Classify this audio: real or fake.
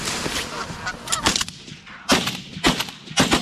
real